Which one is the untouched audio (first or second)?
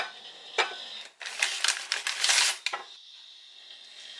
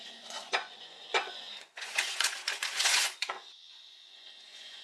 first